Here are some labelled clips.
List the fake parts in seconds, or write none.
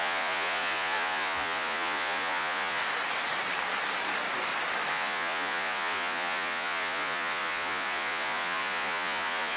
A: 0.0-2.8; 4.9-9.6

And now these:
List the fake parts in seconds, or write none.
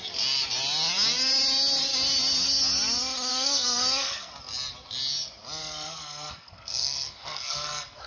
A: 3.3-4.3; 5.6-8.1